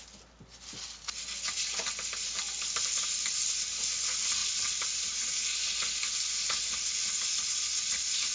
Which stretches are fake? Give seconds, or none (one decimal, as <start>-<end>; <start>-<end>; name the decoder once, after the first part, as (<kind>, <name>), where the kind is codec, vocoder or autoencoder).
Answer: none